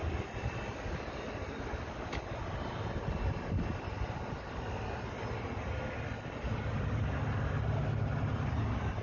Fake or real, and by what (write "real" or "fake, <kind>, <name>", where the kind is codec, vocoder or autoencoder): real